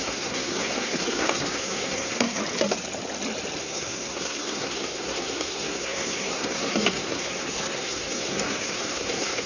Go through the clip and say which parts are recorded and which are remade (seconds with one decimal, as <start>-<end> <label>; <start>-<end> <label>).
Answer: 0.0-2.4 remade; 2.4-3.6 recorded; 3.6-9.5 remade